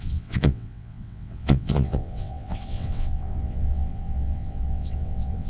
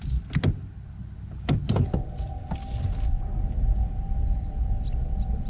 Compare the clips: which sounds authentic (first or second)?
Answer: second